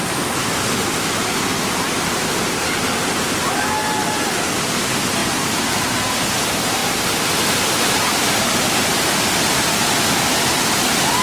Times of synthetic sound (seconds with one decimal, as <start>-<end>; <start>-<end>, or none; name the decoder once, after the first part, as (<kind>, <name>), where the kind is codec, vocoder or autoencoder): 4.0-4.6 (vocoder, BigVGAN v2); 6.8-7.5